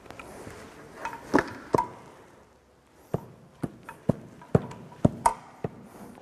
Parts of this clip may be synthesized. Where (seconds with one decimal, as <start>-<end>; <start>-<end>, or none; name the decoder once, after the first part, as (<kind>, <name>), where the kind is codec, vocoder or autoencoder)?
none